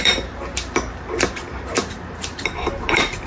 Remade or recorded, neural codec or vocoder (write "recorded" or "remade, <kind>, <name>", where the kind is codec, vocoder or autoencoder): remade, vocoder, BigVGAN v2